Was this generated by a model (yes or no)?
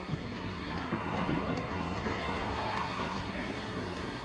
yes